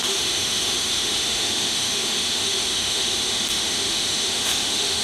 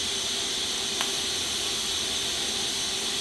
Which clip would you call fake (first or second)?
first